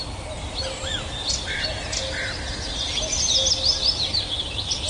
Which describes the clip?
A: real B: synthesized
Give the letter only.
A